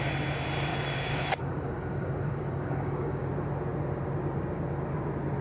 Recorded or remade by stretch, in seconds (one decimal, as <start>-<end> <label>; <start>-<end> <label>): 0.0-0.7 recorded; 0.7-3.3 remade; 3.3-5.4 recorded

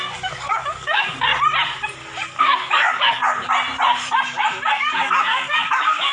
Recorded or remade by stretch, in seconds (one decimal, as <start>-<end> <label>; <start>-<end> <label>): 0.0-1.3 remade; 1.3-2.4 recorded; 2.4-3.2 remade; 3.2-4.7 recorded; 4.7-6.1 remade

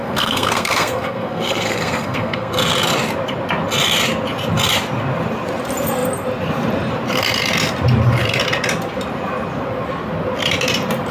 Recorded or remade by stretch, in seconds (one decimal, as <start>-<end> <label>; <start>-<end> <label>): 0.0-2.5 remade; 2.5-11.1 recorded

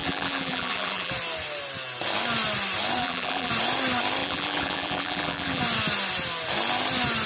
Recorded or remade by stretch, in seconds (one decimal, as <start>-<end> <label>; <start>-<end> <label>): 0.0-1.1 remade; 1.1-3.0 recorded; 3.0-3.5 remade; 3.5-4.2 recorded; 4.2-5.6 remade; 5.6-7.3 recorded